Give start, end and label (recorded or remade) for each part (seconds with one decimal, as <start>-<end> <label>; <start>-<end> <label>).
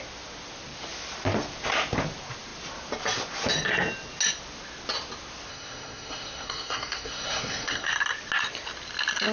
0.0-5.5 recorded; 5.5-7.9 remade; 7.9-9.3 recorded